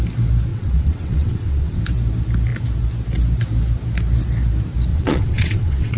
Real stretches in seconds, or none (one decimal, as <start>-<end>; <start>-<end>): 0.0-0.5; 1.8-4.9